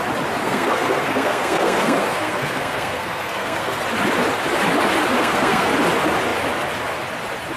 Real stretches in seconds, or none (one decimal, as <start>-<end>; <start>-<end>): 0.0-0.4; 3.8-5.2; 5.7-7.6